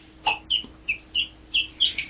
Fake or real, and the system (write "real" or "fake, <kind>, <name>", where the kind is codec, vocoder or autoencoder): real